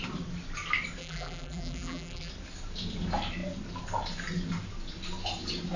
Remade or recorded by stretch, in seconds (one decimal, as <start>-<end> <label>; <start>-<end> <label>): 0.0-1.0 recorded; 1.0-2.3 remade; 2.3-5.8 recorded